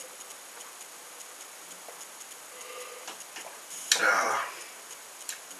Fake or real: real